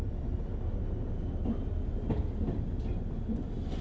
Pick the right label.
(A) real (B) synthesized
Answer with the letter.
A